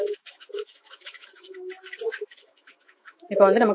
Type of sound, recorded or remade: remade